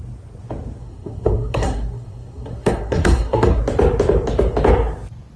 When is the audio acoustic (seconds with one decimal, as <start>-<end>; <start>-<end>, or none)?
0.0-0.8; 3.6-5.4